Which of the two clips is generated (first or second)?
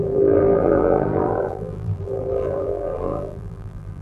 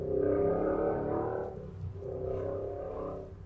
first